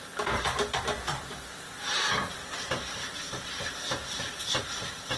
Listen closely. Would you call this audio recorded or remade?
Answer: remade